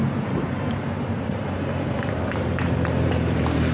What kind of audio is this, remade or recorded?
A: remade